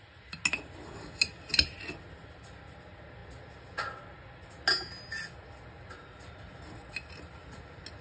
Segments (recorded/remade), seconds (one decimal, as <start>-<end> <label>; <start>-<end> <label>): 0.0-8.0 recorded